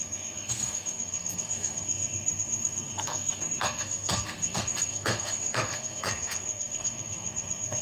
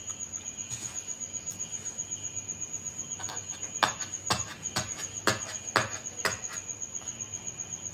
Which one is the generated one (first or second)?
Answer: first